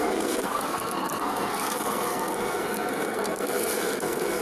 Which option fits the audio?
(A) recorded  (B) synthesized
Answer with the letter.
B